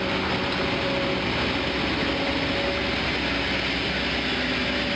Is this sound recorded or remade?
recorded